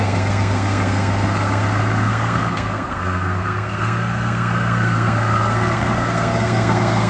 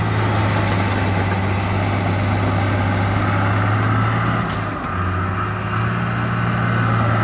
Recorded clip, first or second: second